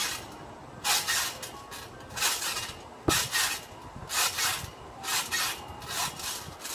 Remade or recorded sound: recorded